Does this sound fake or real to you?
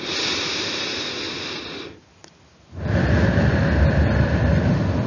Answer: real